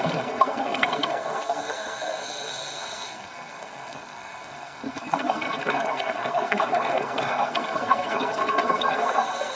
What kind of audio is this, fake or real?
fake